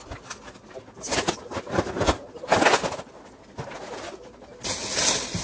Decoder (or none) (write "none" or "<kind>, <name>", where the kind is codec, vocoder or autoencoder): none